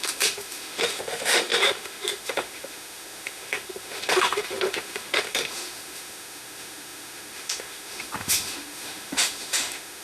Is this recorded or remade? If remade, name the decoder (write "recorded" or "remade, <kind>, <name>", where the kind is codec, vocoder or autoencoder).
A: remade, autoencoder, DAC-VAE